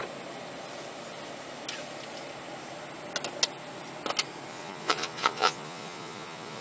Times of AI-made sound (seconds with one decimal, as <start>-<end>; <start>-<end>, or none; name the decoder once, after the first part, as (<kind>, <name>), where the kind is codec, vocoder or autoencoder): 4.5-6.6 (vocoder, Vocos)